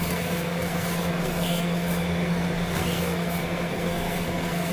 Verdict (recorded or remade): remade